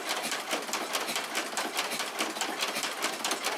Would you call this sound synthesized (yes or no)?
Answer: no